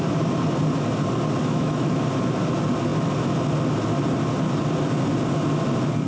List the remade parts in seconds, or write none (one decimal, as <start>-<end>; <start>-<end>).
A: 1.4-2.0